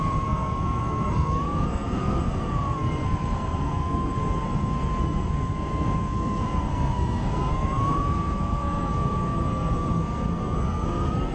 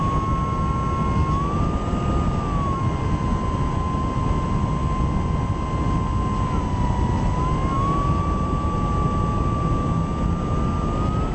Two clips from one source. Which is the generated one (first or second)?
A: first